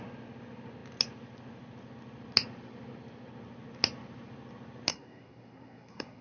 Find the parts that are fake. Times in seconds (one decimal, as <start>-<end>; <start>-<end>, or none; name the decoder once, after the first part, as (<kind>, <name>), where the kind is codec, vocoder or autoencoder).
4.9-6.2 (codec, SNAC)